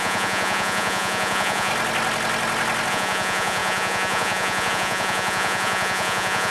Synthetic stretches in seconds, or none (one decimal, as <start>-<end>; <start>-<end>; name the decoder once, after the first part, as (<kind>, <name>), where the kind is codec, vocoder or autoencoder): 0.0-1.7 (vocoder, Vocos); 2.9-6.5